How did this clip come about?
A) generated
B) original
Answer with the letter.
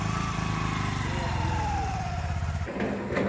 B